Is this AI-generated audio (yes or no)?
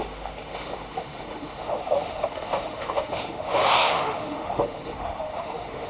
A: yes